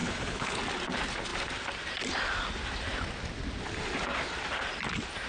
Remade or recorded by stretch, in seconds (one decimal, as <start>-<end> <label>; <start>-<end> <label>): 0.0-0.6 remade; 0.6-5.3 recorded